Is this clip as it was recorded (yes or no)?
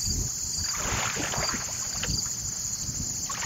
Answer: yes